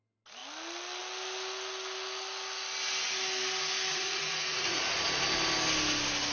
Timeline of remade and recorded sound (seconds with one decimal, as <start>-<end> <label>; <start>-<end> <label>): 0.0-3.9 recorded; 3.9-4.8 remade; 4.8-6.3 recorded